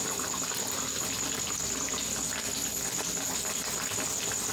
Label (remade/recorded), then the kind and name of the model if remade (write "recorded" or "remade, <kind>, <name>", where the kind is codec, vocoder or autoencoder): recorded